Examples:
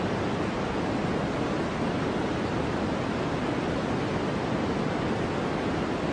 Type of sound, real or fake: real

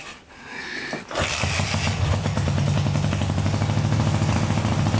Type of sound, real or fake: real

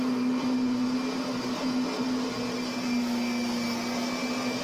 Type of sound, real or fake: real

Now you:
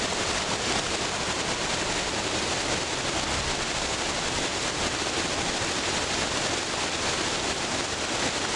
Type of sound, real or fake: real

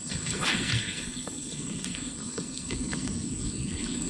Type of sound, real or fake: fake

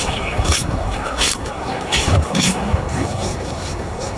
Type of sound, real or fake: fake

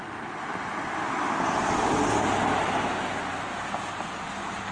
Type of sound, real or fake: real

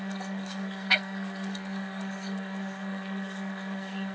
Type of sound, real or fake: fake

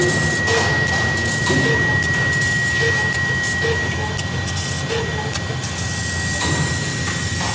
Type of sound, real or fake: real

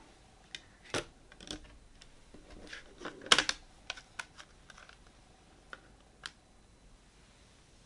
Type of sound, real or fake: real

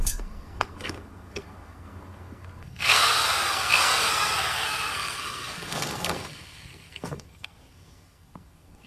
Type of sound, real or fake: fake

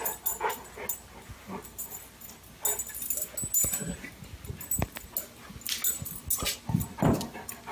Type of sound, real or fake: real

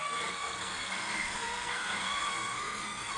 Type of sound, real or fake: fake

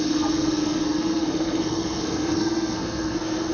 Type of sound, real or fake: fake